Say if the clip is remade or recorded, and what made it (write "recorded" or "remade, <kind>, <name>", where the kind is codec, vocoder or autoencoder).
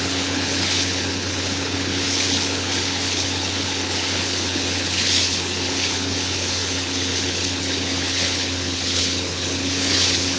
remade, codec, HILCodec